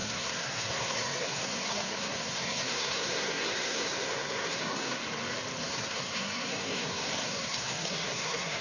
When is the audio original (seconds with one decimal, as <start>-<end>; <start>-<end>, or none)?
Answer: 5.0-5.6